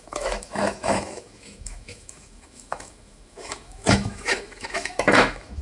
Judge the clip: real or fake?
fake